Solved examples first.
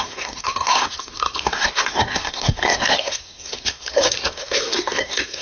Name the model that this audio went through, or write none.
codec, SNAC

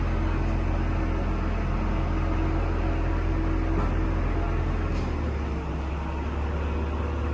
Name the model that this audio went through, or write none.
none